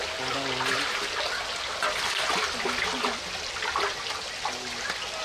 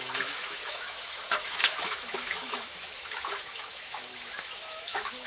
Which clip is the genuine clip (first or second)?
first